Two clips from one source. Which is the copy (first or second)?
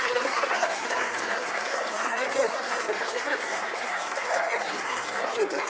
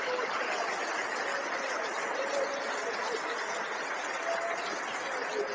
first